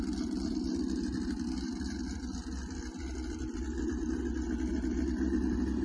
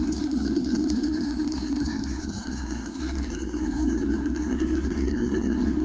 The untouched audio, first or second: first